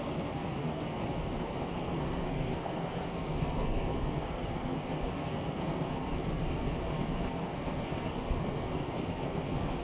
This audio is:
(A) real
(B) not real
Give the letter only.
B